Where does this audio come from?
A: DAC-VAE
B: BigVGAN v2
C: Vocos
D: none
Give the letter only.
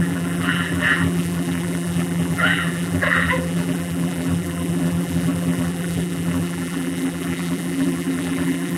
B